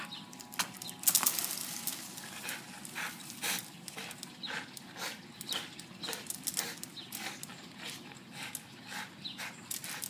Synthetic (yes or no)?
no